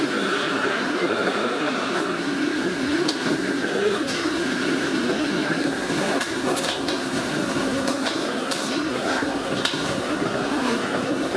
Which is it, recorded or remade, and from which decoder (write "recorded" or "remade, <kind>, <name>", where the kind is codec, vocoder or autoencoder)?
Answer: remade, codec, SNAC